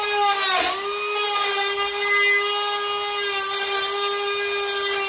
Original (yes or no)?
yes